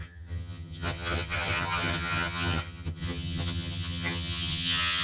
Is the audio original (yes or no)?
no